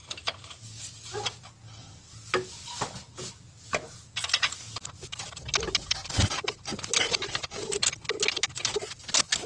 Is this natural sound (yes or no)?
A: yes